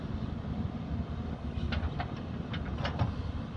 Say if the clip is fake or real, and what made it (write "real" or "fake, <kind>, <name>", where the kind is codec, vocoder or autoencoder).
real